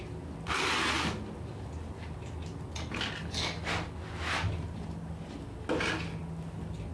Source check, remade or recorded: recorded